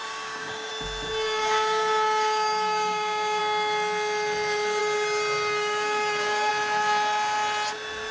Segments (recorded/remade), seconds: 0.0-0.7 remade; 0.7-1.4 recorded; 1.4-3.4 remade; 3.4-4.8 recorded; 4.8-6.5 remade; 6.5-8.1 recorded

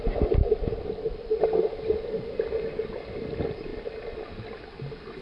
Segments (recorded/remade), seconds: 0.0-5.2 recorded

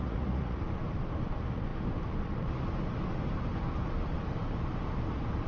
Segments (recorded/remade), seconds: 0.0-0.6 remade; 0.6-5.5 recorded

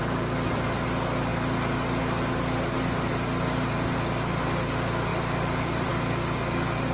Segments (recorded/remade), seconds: 0.0-5.1 recorded; 5.1-5.9 remade; 5.9-6.9 recorded

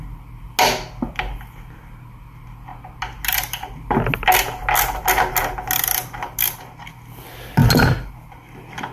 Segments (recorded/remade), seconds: 0.0-8.9 recorded

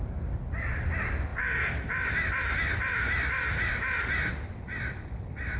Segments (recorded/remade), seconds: 0.0-5.6 recorded

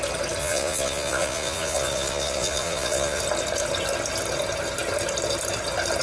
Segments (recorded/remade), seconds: 0.0-0.4 recorded; 0.4-3.2 remade; 3.2-6.0 recorded

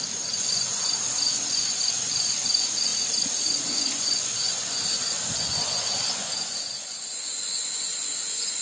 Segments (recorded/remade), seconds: 0.0-2.9 remade; 2.9-3.6 recorded; 3.6-8.6 remade